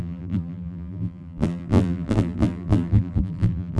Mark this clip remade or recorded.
remade